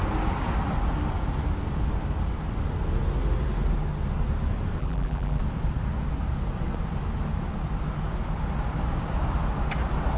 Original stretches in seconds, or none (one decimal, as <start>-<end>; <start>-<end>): 0.0-4.8; 5.4-10.2